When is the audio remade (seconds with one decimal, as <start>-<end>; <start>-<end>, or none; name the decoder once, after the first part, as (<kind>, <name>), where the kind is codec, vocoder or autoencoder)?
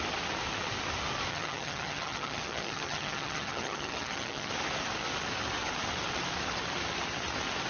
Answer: 1.3-4.5 (vocoder, HiFi-GAN)